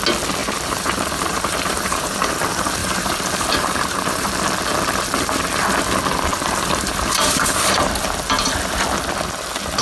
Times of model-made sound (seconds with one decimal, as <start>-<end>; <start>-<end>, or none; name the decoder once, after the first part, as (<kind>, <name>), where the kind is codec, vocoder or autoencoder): 0.4-2.3 (vocoder, BigVGAN v2); 2.8-4.3; 6.3-7.9